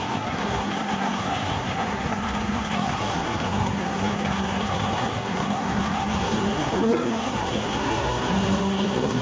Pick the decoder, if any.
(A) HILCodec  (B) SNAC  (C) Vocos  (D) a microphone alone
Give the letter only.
B